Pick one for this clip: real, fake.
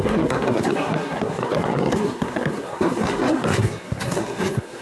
fake